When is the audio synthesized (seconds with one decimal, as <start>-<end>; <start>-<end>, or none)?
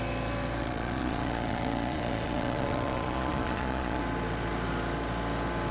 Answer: 0.6-4.0